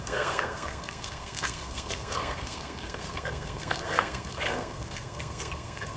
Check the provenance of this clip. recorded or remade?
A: remade